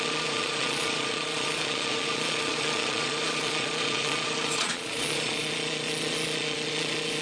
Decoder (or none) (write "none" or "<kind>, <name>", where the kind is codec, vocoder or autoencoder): vocoder, Vocos